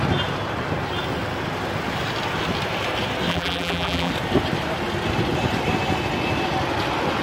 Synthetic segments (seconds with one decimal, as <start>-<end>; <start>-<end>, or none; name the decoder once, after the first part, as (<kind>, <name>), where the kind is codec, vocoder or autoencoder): 3.3-4.1 (vocoder, BigVGAN v2)